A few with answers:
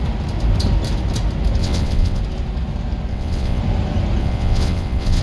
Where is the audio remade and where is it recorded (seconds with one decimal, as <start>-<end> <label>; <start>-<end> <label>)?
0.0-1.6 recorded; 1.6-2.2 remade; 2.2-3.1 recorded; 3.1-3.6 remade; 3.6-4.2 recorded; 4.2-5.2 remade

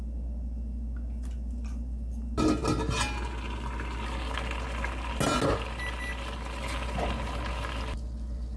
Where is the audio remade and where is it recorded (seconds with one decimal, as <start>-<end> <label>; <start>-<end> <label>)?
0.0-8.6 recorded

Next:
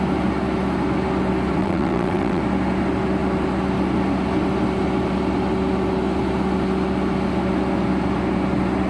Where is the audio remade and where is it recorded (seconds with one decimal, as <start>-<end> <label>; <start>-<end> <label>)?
0.0-1.6 recorded; 1.6-2.4 remade; 2.4-8.9 recorded

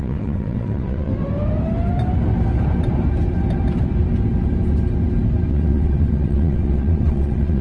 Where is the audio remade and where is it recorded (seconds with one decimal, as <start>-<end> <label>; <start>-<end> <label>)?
0.0-1.1 remade; 1.1-5.5 recorded; 5.5-7.6 remade

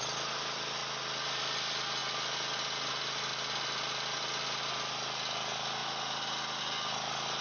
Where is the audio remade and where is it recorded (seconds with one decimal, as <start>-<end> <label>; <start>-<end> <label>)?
0.0-7.4 recorded

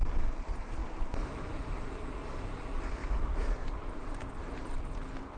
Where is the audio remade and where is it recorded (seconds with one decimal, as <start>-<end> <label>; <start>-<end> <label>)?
0.0-5.4 recorded